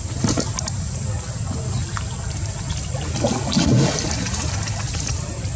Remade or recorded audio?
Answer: recorded